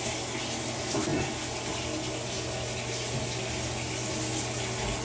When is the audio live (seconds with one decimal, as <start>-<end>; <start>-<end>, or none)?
0.0-5.0